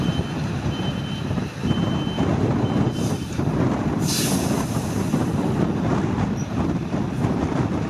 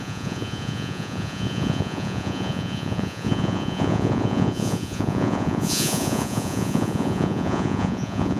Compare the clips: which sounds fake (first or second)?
second